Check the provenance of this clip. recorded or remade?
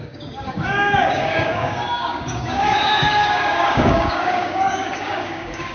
remade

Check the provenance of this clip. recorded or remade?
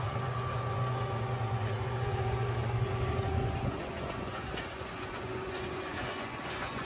remade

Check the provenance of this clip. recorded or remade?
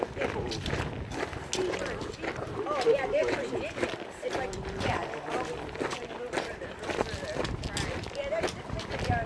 recorded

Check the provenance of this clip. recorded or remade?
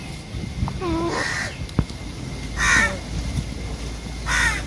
recorded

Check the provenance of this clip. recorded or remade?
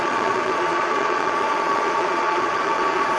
remade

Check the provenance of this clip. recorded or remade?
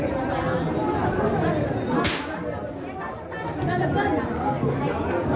recorded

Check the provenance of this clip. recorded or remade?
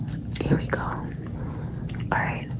recorded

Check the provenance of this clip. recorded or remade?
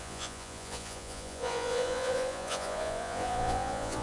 remade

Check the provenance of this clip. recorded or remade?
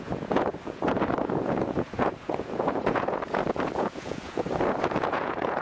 remade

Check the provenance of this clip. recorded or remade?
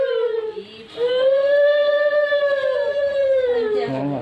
recorded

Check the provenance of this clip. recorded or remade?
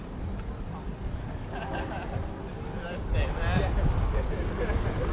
recorded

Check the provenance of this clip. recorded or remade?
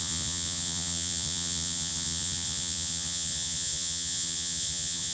remade